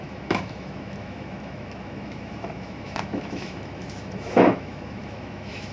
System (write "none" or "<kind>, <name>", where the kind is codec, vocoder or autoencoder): autoencoder, DAC-VAE